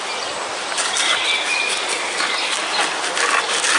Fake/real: real